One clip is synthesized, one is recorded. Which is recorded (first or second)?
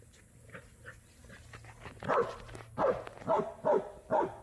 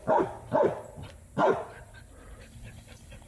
first